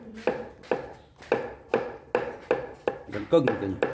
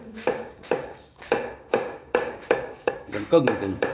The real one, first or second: first